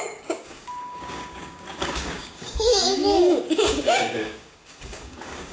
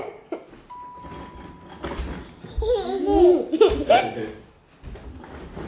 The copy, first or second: first